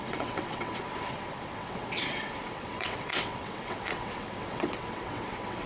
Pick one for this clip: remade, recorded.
remade